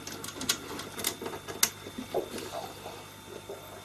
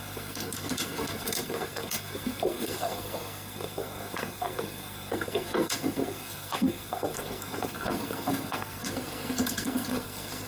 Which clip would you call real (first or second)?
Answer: first